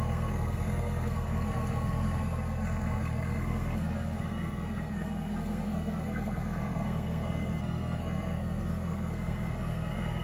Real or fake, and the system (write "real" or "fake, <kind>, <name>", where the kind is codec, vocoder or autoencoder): fake, codec, SNAC